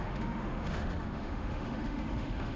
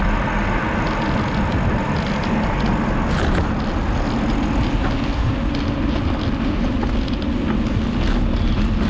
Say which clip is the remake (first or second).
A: first